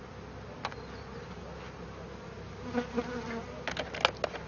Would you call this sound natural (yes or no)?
yes